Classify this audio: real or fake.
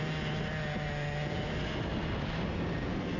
real